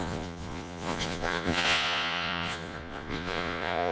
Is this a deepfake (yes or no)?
yes